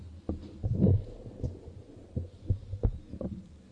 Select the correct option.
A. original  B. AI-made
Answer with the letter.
A